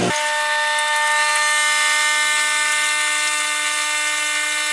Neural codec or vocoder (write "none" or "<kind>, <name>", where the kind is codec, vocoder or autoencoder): none